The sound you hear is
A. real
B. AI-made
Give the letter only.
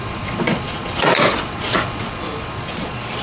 B